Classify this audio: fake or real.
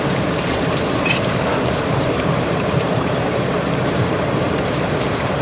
fake